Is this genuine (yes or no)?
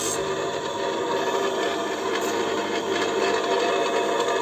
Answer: yes